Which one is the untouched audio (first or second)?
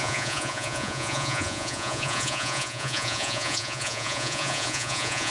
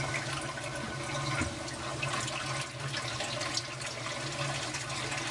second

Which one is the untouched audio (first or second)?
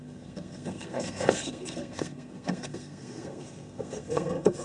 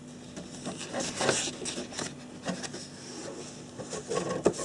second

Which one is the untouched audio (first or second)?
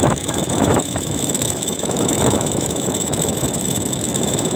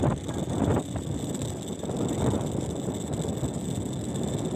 second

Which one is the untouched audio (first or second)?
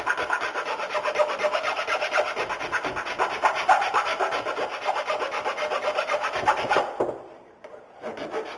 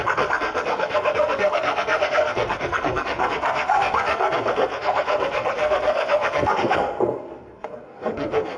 first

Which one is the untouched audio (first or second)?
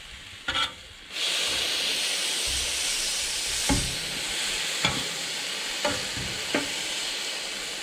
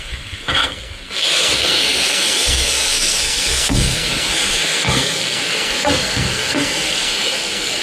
first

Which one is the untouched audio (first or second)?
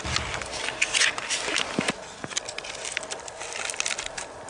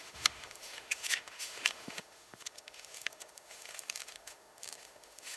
first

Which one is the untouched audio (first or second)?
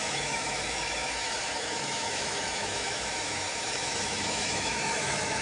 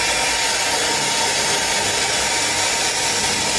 second